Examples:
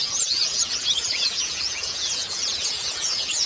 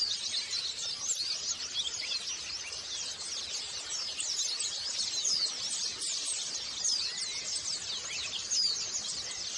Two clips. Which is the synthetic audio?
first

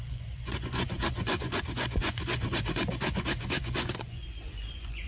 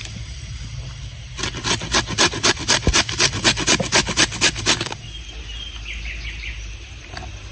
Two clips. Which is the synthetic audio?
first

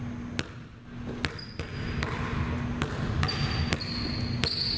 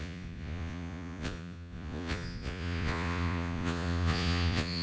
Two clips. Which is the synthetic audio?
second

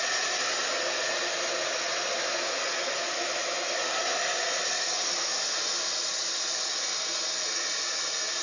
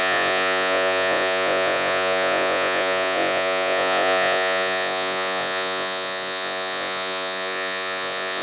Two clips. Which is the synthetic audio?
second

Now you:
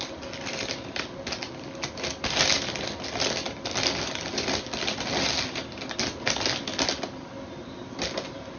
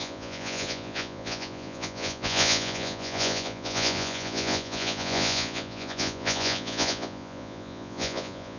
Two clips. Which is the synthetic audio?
second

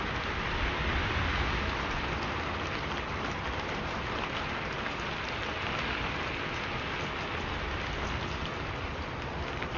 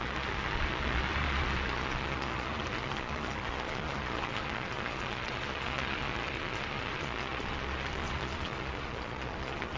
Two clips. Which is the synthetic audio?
second